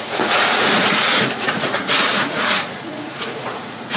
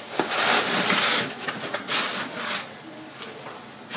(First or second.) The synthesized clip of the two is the first